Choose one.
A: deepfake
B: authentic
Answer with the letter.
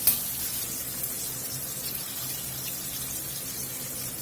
B